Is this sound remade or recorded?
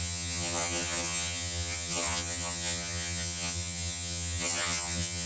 remade